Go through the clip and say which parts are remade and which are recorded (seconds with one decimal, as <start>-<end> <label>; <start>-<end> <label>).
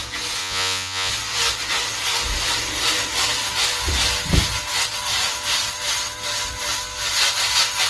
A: 0.0-0.4 recorded; 0.4-1.1 remade; 1.1-7.9 recorded